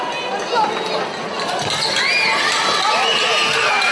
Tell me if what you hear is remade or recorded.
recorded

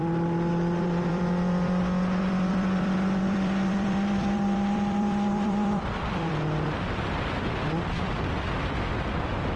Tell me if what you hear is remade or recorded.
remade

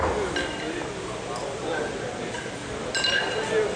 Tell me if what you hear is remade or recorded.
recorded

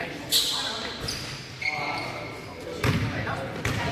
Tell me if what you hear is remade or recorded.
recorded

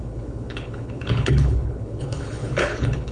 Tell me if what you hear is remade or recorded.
remade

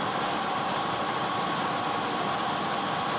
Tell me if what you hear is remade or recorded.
recorded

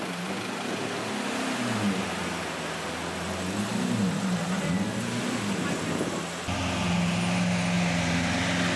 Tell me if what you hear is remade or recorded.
recorded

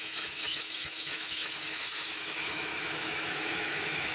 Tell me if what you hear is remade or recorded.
remade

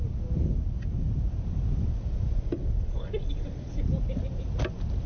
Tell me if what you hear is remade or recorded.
recorded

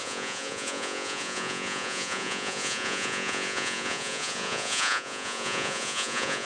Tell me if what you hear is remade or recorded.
remade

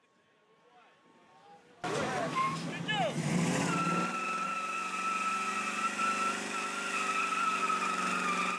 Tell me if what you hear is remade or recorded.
recorded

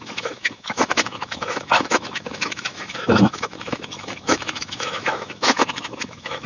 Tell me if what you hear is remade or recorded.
remade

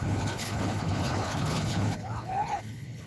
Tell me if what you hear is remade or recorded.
remade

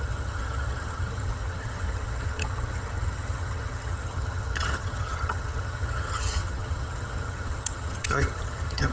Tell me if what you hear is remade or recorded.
remade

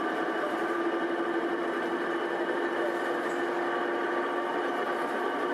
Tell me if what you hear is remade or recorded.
recorded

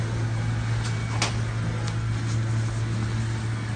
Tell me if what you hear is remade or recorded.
recorded